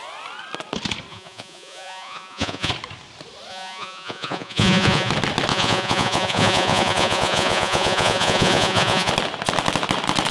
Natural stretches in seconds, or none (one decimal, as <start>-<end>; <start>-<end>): 0.0-1.1; 2.7-3.5; 5.1-5.5; 9.1-10.3